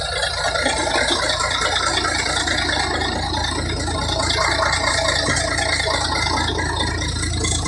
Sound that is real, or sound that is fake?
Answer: real